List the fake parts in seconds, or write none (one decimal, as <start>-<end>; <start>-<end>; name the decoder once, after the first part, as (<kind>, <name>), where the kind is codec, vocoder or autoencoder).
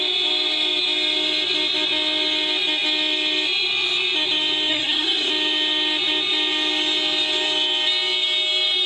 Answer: 4.7-5.3 (codec, SNAC)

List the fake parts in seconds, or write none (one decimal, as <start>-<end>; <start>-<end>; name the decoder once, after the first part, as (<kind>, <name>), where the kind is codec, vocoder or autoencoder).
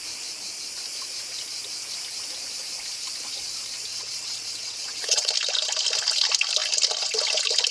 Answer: 3.9-5.3 (vocoder, WaveNeXt)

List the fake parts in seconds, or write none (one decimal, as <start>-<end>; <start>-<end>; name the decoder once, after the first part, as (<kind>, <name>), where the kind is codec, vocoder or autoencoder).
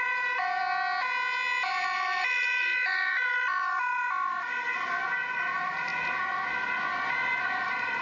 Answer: 0.0-0.6 (vocoder, BigVGAN v2); 1.7-5.9; 7.3-8.0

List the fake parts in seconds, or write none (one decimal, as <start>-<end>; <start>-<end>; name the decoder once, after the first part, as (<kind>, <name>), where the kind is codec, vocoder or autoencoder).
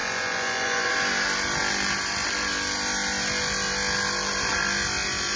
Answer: 0.0-0.9 (vocoder, Vocos)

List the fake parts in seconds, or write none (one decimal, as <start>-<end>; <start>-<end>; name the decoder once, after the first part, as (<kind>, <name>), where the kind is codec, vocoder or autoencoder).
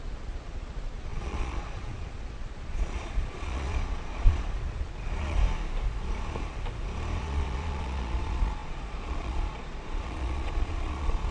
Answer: 0.0-5.4 (vocoder, Vocos); 7.2-11.3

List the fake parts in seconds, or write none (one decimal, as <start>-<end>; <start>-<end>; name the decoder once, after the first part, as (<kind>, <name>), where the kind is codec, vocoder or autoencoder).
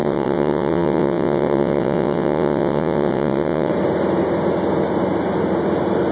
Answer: 0.0-3.7 (vocoder, WaveNeXt)